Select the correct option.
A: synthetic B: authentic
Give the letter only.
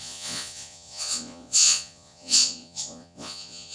A